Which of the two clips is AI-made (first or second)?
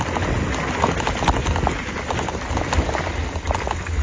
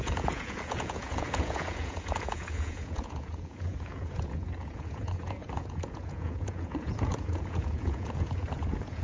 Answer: second